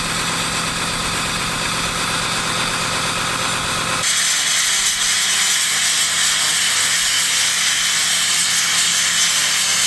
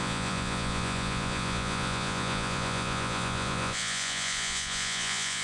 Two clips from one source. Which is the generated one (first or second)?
second